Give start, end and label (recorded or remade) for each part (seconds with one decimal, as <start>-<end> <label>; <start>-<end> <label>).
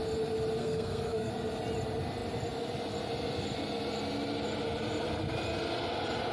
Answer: 0.0-0.6 recorded; 0.6-1.3 remade; 1.3-6.3 recorded